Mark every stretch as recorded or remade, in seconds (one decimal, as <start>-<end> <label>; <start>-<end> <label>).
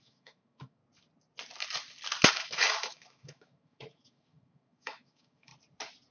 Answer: 0.0-0.8 remade; 0.8-2.3 recorded; 2.3-5.5 remade; 5.5-6.1 recorded